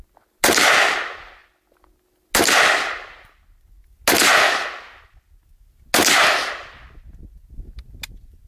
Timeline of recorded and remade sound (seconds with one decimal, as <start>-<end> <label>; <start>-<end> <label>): 0.0-8.5 recorded